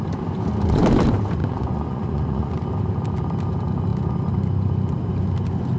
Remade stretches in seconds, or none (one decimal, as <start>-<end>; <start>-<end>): 1.4-2.5